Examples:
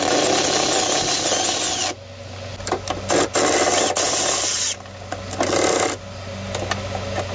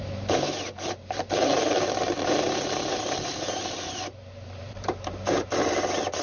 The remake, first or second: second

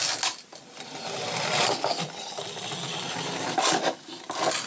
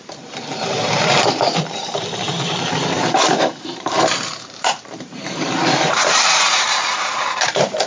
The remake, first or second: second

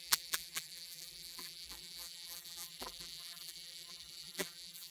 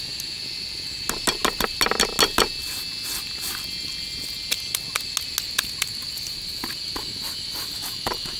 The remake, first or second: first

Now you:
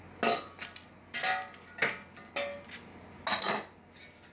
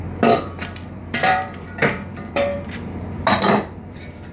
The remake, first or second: second